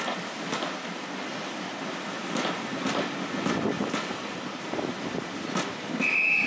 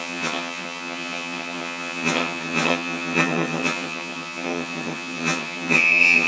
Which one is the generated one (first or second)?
second